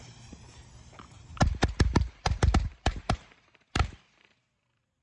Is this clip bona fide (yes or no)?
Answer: no